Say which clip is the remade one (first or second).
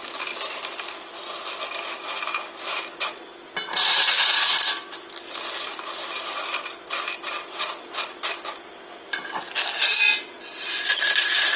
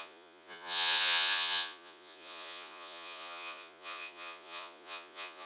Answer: second